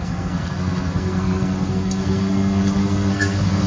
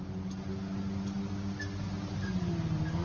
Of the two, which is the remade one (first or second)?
first